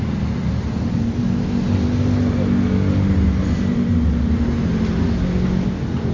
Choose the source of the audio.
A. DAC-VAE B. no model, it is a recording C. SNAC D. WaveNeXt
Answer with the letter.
B